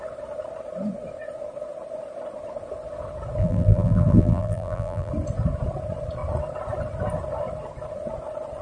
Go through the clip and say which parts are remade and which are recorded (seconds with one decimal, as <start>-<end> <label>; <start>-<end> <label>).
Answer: 0.0-3.4 recorded; 3.4-5.1 remade; 5.1-8.6 recorded